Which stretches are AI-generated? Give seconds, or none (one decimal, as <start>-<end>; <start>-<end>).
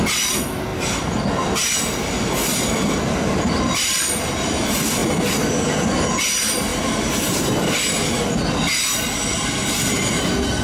6.7-8.0